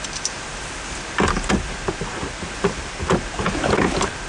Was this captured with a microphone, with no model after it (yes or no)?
yes